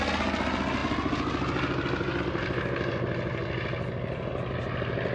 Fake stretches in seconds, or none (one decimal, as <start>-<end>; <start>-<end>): none